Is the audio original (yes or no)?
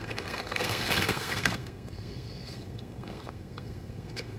no